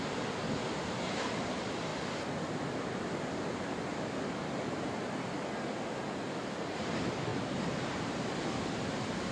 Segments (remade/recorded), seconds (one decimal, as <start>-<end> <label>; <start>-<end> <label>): 0.0-9.3 recorded